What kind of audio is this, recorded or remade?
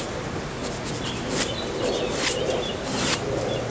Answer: recorded